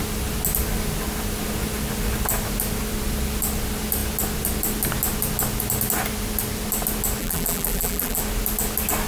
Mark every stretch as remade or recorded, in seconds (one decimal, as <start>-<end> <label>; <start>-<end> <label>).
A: 0.0-7.2 recorded; 7.2-8.2 remade; 8.2-9.1 recorded